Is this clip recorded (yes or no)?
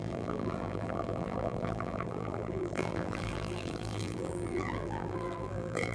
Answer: no